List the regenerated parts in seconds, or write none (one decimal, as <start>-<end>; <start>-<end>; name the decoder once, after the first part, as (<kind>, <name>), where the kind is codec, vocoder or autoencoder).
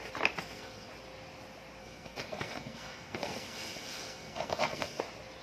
0.4-0.9 (codec, SNAC); 1.8-5.0